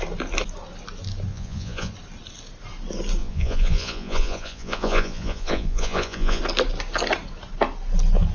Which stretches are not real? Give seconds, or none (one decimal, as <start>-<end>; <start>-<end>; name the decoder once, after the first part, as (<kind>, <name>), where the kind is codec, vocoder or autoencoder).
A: 1.3-1.9 (vocoder, Vocos); 3.2-6.4